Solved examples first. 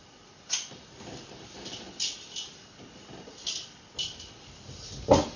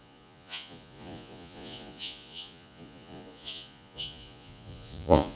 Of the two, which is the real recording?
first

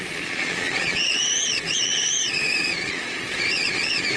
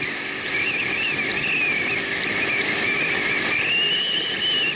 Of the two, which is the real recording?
second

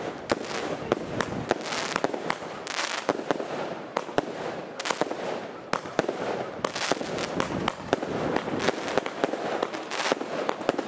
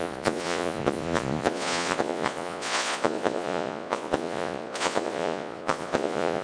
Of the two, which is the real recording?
first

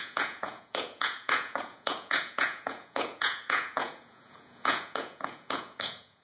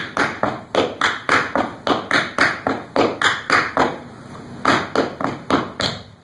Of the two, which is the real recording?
second